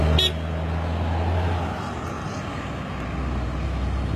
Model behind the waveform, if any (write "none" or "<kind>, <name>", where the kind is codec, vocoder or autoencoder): none